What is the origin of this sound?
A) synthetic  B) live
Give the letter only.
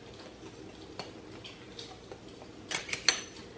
B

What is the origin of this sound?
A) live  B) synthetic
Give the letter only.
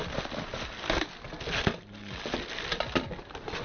A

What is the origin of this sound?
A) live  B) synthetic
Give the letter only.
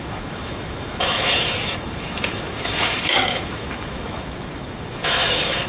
B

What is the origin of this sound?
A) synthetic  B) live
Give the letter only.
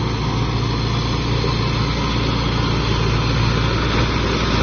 B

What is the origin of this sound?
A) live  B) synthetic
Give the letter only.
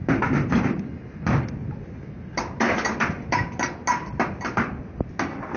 A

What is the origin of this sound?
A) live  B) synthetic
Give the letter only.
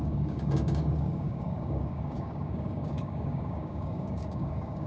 B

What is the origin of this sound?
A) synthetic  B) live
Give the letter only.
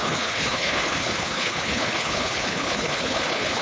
A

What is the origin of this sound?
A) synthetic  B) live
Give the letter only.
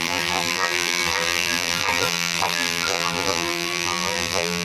A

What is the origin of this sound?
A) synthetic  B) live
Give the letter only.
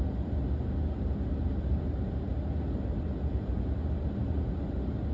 B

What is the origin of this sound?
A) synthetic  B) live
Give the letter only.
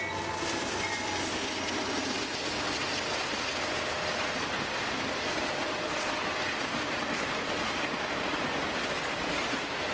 B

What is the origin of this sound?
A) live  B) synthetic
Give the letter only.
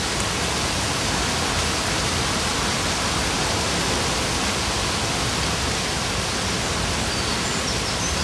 A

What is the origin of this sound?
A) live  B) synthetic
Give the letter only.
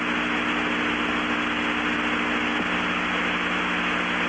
A